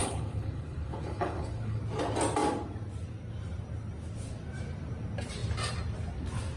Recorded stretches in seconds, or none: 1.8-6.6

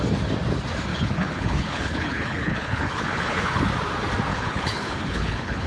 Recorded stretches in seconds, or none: 0.0-0.9; 3.7-4.3

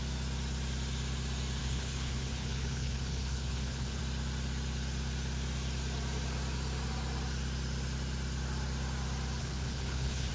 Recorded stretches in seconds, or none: 0.0-1.6; 4.0-9.4

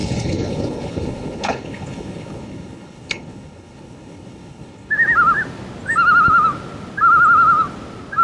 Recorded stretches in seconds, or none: 4.9-8.2

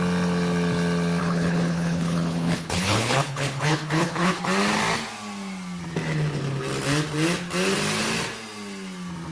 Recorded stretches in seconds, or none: 0.0-1.2; 4.4-9.3

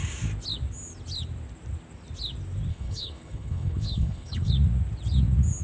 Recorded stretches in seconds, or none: 0.0-2.7; 4.5-5.6

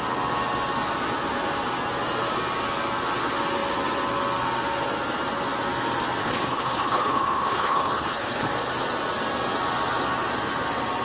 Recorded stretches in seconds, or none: 0.0-6.2; 8.5-11.0

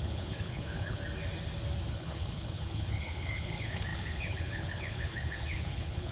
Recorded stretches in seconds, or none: 1.0-1.9